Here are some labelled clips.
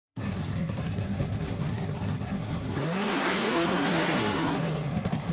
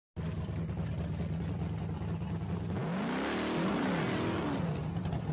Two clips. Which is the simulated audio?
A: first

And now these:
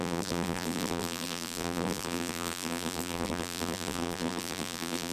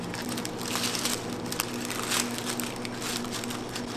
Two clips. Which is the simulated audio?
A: first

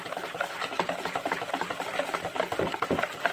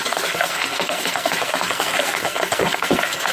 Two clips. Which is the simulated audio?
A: second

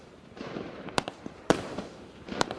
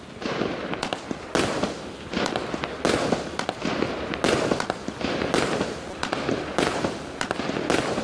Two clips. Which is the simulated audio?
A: first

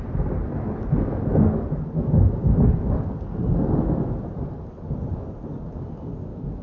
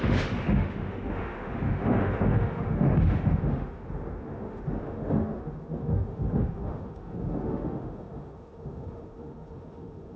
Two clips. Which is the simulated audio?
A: second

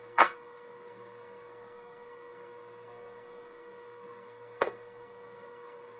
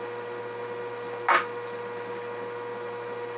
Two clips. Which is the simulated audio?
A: first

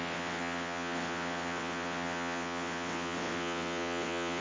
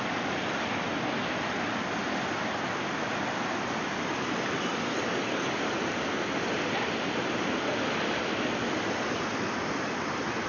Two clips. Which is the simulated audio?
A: first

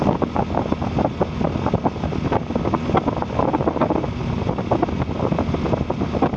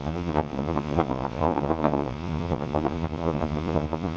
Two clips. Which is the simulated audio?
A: second